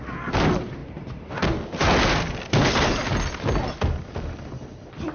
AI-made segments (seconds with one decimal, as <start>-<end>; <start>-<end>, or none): none

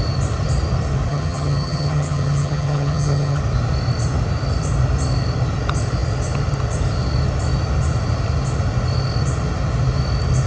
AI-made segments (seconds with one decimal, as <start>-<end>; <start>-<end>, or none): 1.1-3.4

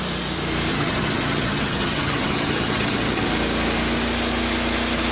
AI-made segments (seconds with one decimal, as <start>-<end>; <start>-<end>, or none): 0.7-3.3

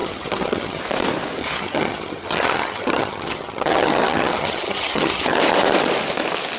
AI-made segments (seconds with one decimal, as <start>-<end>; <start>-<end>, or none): 0.0-0.8; 1.4-5.4

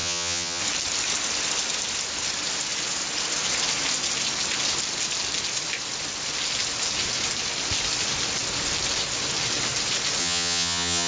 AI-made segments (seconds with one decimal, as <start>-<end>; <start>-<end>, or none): 0.0-0.6; 10.2-11.1